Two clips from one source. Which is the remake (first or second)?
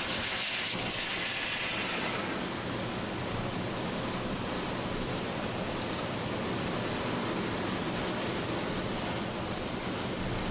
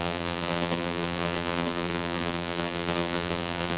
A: second